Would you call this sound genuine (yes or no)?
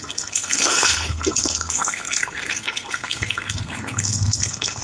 no